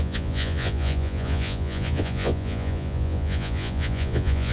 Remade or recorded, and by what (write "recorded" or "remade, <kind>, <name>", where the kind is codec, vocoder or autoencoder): remade, vocoder, Vocos